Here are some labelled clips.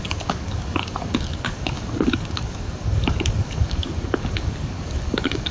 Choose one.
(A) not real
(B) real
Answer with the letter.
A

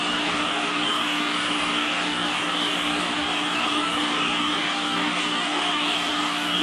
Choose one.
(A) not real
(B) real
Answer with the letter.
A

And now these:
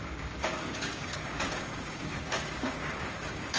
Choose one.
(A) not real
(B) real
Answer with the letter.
A